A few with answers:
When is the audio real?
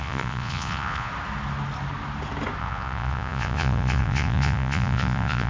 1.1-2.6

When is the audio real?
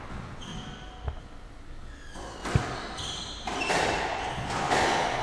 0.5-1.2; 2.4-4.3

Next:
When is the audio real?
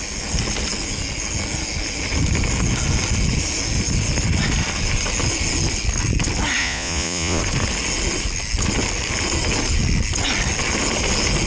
0.0-6.6; 7.4-11.5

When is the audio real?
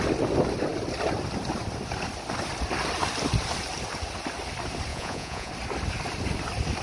0.0-4.9; 5.5-6.8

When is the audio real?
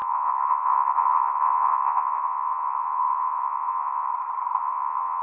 4.1-4.6